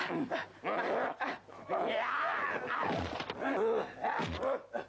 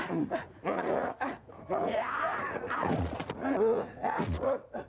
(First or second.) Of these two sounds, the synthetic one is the second